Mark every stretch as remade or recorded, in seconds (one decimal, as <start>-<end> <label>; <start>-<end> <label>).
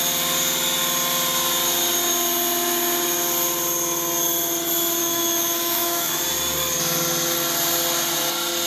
0.0-5.0 recorded; 5.0-6.2 remade; 6.2-8.7 recorded